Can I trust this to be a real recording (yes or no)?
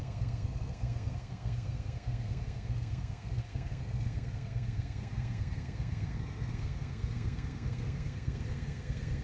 no